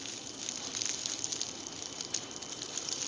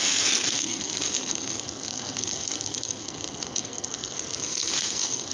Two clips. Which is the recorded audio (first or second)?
first